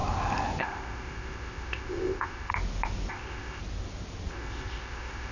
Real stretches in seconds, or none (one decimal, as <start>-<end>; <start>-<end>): 0.0-0.6; 2.5-3.1; 3.6-4.3